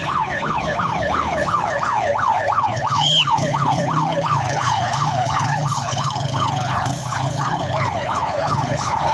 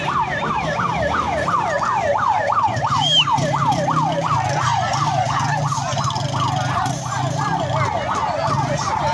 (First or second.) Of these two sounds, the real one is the second